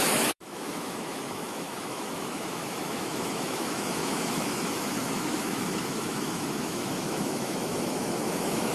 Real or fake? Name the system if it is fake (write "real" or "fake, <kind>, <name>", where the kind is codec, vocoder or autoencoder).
fake, autoencoder, DAC-VAE